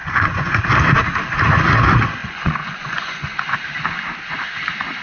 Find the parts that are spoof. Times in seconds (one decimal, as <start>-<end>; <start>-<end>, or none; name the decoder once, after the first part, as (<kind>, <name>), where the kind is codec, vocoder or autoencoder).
0.0-0.6 (vocoder, Vocos); 2.2-3.3